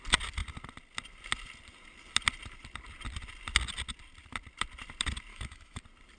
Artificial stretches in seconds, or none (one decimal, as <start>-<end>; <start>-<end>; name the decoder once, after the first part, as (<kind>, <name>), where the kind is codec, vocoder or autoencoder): 5.3-5.8 (autoencoder, DAC-VAE)